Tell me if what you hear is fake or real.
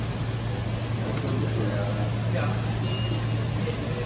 real